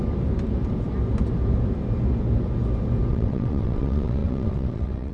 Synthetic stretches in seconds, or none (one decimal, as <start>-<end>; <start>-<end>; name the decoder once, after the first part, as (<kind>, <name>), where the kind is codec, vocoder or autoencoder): 3.1-5.1 (vocoder, WaveNeXt)